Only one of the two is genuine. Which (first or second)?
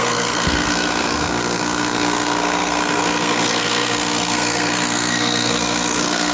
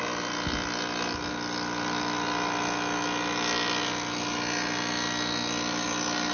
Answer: second